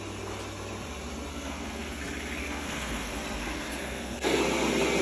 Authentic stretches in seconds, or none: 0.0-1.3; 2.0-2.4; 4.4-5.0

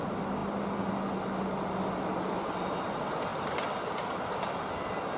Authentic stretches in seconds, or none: 0.0-5.2

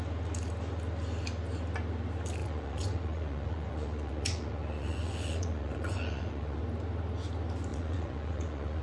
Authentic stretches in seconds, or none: 0.0-2.4; 6.6-7.7

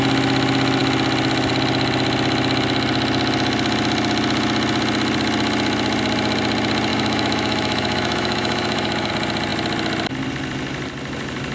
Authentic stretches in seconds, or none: 0.0-6.9; 9.1-11.5

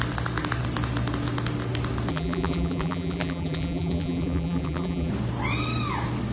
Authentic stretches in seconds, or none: 0.0-2.1; 5.1-6.3

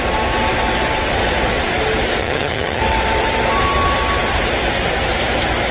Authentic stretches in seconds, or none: 0.0-2.2; 2.8-5.7

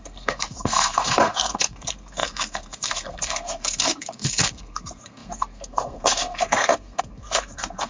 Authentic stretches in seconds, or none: none